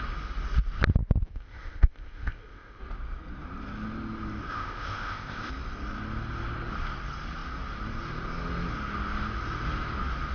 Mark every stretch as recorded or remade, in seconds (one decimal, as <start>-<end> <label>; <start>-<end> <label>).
0.0-1.3 recorded; 1.3-2.8 remade; 2.8-4.5 recorded; 4.5-5.5 remade; 5.5-10.3 recorded

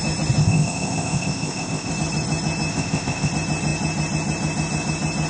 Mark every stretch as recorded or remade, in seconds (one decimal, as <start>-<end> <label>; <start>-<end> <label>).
0.0-0.4 recorded; 0.4-1.9 remade; 1.9-2.7 recorded; 2.7-3.3 remade; 3.3-5.3 recorded

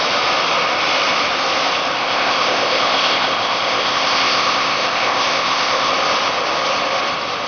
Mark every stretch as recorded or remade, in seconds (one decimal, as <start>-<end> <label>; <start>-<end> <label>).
0.0-2.0 recorded; 2.0-5.9 remade; 5.9-7.5 recorded

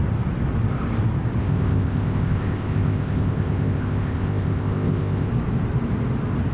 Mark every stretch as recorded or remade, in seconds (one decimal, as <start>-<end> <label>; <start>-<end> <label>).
0.0-1.4 recorded; 1.4-5.3 remade; 5.3-6.5 recorded

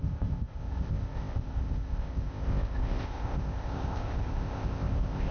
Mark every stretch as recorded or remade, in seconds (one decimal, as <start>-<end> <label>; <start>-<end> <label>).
0.0-5.3 remade

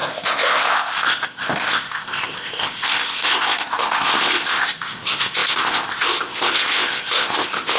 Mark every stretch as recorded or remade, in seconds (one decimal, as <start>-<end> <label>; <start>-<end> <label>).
0.0-7.8 remade

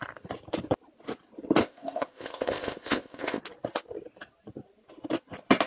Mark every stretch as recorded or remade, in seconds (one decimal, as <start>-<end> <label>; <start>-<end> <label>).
0.0-1.6 recorded; 1.6-3.4 remade; 3.4-5.7 recorded